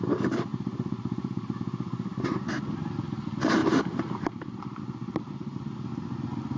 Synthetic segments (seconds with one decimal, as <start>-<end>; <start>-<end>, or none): 0.5-1.6; 3.6-4.8